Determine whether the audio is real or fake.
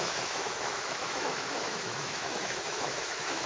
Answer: fake